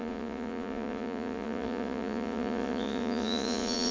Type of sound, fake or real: fake